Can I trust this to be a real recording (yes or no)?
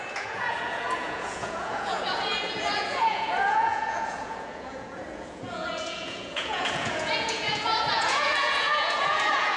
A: no